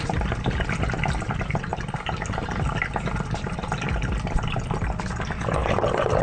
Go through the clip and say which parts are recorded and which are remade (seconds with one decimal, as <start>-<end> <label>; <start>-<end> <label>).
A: 0.0-6.2 recorded